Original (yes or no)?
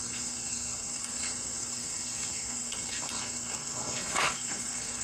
no